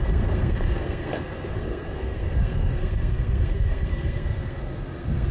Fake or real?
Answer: fake